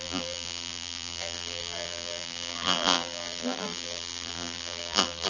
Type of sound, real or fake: fake